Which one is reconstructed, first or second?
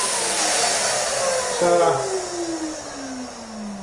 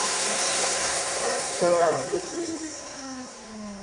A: second